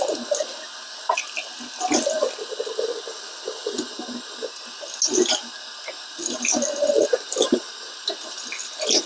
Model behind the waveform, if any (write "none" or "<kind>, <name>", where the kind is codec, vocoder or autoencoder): none